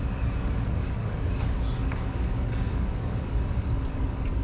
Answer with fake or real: fake